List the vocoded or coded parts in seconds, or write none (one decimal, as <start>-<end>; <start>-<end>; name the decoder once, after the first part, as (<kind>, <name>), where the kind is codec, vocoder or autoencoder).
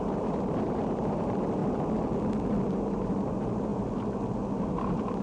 0.0-1.6 (vocoder, BigVGAN v2); 2.7-3.7; 4.7-5.2